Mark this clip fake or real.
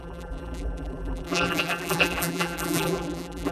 fake